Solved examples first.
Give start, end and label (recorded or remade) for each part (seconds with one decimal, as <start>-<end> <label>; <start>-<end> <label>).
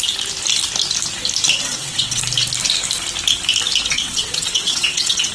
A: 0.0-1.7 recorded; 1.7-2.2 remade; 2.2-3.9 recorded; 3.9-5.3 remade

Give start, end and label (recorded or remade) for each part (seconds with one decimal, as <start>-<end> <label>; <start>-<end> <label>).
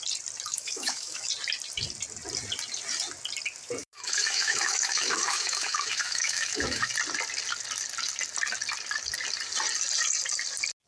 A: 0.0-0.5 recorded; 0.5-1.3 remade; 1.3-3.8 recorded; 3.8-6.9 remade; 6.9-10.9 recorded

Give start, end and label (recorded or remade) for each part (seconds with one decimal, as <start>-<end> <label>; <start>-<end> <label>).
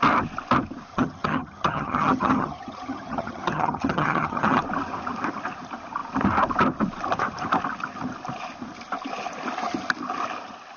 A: 0.0-0.9 recorded; 0.9-4.6 remade; 4.6-10.8 recorded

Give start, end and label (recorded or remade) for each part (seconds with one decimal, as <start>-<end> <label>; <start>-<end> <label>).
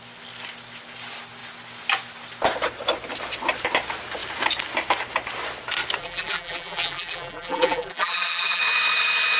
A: 0.0-6.0 recorded; 6.0-8.6 remade; 8.6-9.4 recorded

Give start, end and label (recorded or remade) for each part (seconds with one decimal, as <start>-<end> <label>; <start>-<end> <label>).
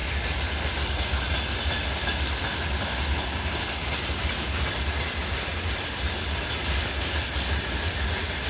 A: 0.0-8.5 recorded